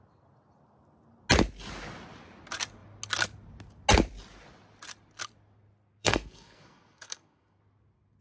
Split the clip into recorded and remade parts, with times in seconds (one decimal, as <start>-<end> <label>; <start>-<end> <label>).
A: 0.0-6.0 recorded; 6.0-7.6 remade; 7.6-8.2 recorded